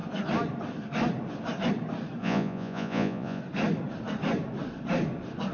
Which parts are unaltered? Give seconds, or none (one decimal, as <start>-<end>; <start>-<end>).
0.0-2.2; 3.4-5.5